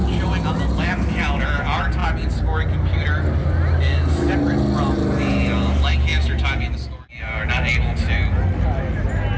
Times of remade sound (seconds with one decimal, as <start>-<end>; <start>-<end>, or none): none